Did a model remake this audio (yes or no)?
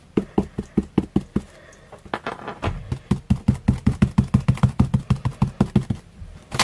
no